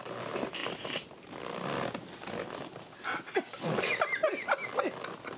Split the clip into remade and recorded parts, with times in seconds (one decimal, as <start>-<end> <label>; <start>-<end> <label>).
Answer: 0.0-5.4 recorded